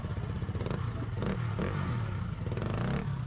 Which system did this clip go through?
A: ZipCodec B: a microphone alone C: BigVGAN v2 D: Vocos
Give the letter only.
B